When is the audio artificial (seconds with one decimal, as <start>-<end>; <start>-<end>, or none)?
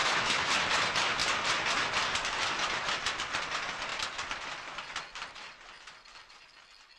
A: 0.0-0.5